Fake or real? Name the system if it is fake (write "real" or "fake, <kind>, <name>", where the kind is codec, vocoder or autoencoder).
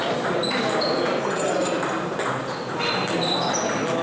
real